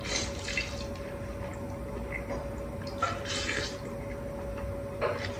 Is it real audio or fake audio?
real